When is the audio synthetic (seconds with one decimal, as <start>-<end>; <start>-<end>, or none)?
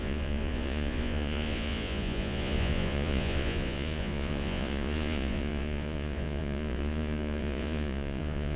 0.0-8.6